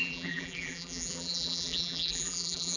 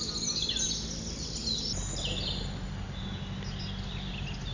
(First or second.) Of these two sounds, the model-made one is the first